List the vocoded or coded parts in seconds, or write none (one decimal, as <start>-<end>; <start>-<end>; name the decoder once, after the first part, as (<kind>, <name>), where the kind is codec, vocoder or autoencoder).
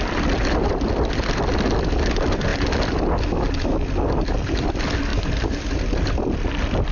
none